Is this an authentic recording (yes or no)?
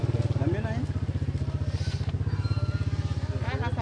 yes